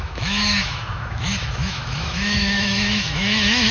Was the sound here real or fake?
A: fake